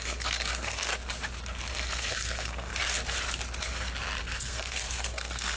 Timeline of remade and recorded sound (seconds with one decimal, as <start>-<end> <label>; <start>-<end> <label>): 0.0-0.9 remade; 0.9-1.7 recorded; 1.7-2.7 remade; 2.7-4.2 recorded; 4.2-5.6 remade